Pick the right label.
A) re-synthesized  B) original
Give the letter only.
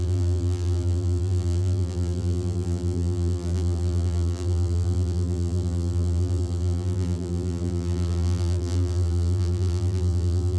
A